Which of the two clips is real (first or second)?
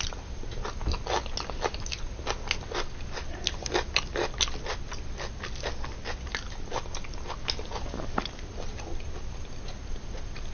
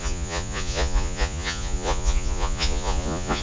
first